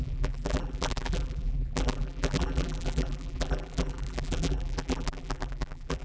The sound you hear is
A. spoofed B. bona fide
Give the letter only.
A